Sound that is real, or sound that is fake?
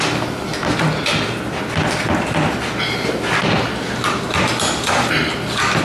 real